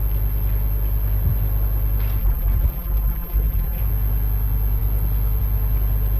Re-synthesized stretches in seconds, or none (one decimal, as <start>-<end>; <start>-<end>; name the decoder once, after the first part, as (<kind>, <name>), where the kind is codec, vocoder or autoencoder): 2.2-3.8 (vocoder, BigVGAN v2)